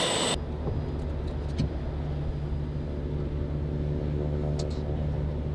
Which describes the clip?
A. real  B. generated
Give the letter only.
A